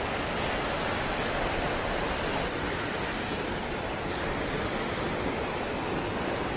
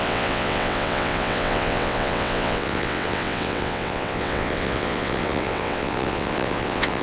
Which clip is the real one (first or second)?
first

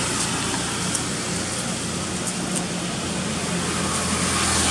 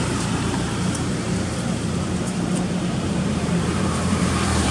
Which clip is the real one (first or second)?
first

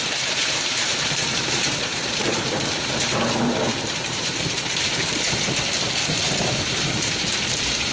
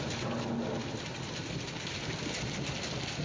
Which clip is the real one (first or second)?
second